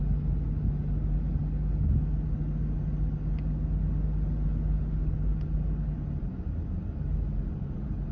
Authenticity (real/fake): real